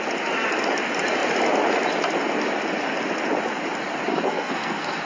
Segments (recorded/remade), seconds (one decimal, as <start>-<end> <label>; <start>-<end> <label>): 0.0-4.1 recorded; 4.1-5.0 remade